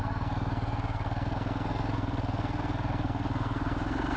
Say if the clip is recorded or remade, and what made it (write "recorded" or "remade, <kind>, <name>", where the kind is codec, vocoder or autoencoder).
remade, codec, SNAC